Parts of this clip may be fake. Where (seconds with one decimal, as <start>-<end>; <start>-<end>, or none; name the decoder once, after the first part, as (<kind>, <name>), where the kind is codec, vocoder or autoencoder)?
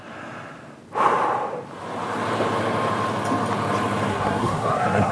4.1-5.1 (codec, SNAC)